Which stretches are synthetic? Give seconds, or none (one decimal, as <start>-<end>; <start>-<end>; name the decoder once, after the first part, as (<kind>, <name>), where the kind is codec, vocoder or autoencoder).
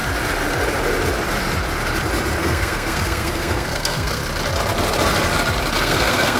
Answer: 2.4-4.2 (codec, SNAC); 5.8-6.4